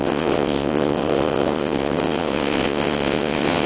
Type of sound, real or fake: fake